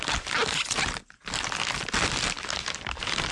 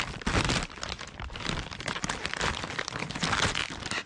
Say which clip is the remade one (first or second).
second